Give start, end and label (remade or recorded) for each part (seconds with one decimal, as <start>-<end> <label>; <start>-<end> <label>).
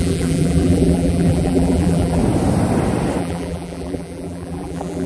0.0-2.2 remade; 2.2-3.2 recorded; 3.2-5.1 remade